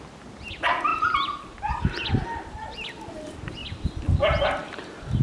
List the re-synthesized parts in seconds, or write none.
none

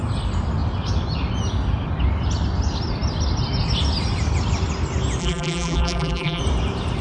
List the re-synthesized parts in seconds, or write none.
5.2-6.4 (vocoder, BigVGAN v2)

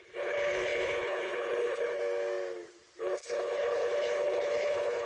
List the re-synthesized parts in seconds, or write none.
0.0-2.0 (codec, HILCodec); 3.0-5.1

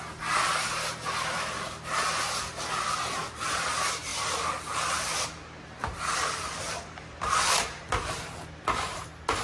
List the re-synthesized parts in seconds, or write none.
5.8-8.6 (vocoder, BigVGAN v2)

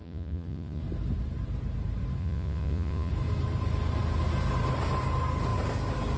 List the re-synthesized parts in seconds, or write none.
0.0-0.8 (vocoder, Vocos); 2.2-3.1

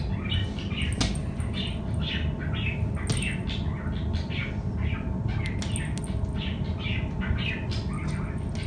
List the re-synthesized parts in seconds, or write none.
none

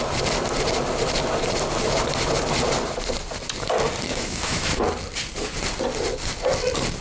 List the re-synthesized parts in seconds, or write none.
4.1-4.8 (autoencoder, DAC-VAE)

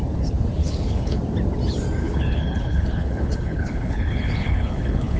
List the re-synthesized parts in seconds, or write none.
0.6-1.2 (codec, HILCodec); 2.0-5.2